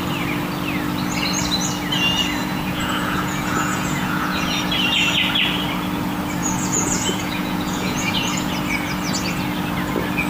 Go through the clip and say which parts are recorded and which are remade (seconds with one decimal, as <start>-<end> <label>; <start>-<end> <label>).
0.0-2.4 recorded; 2.4-4.6 remade; 4.6-6.4 recorded; 6.4-8.5 remade; 8.5-10.3 recorded